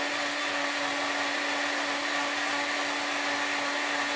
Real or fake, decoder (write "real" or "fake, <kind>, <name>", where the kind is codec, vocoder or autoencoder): real